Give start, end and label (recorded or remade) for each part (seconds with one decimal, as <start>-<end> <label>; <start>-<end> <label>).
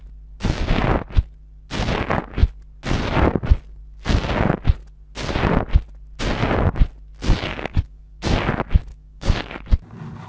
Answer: 0.0-7.5 recorded; 7.5-8.2 remade; 8.2-8.9 recorded; 8.9-9.5 remade; 9.5-10.3 recorded